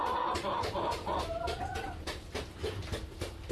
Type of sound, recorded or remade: recorded